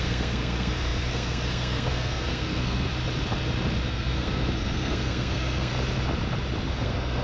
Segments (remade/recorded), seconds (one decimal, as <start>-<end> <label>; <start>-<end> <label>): 0.0-2.9 remade; 2.9-3.9 recorded; 3.9-5.7 remade; 5.7-6.7 recorded; 6.7-7.2 remade